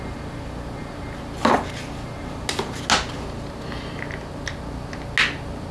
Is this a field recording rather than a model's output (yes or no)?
yes